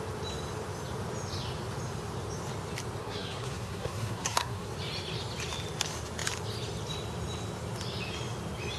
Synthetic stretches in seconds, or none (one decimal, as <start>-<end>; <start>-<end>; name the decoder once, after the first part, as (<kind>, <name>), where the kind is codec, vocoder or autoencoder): 3.0-4.7 (codec, SNAC)